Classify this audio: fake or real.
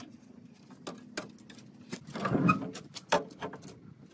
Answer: real